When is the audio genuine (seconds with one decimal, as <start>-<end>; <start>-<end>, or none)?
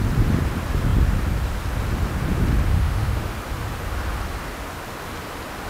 0.0-2.7; 3.3-5.7